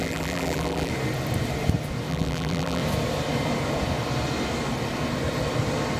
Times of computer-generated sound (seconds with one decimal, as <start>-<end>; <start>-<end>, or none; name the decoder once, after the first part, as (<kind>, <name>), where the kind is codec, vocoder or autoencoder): 0.0-0.9 (vocoder, BigVGAN v2); 2.1-2.8